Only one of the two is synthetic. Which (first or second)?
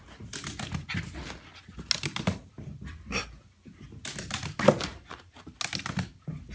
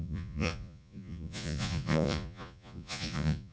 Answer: second